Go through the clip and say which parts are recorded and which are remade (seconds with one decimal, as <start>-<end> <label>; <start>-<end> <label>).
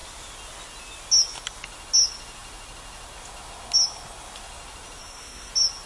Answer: 0.0-5.0 recorded; 5.0-5.5 remade; 5.5-5.9 recorded